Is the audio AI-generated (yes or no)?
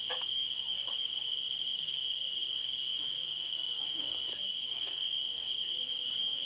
yes